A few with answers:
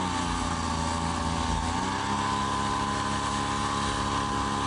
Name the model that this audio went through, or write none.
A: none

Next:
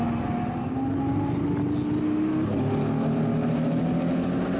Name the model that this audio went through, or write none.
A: none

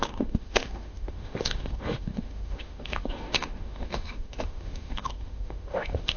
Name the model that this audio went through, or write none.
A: autoencoder, DAC-VAE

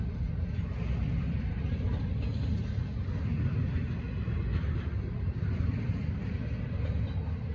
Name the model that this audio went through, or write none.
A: none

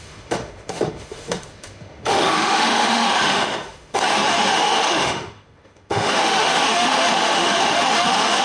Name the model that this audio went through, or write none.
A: autoencoder, DAC-VAE